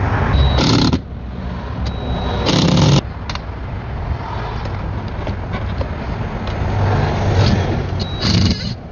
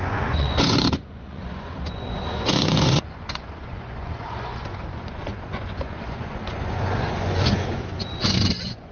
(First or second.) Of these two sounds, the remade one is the second